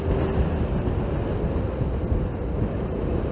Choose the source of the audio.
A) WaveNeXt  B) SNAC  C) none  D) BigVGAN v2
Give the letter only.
C